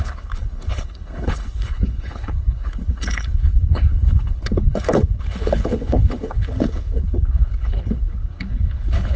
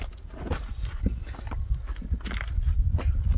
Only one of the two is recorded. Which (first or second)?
second